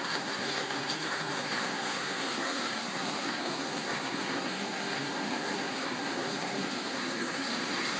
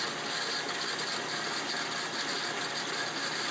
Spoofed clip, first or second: first